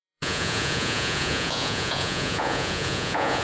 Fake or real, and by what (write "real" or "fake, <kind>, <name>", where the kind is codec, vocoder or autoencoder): fake, vocoder, Vocos